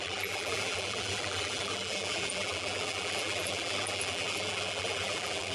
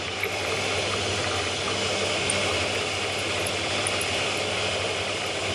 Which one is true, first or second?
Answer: second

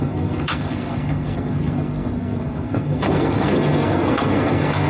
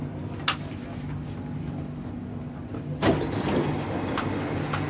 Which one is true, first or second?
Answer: second